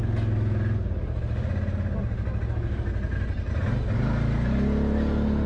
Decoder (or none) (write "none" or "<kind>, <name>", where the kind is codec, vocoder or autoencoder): none